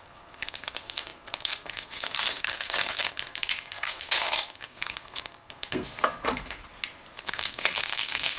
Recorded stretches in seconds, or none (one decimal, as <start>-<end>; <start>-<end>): 6.6-7.2